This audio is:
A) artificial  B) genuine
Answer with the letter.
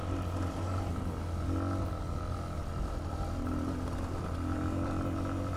B